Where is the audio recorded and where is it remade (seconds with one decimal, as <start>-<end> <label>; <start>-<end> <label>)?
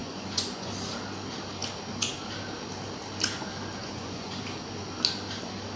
0.0-0.7 remade; 0.7-3.8 recorded; 3.8-4.4 remade; 4.4-5.8 recorded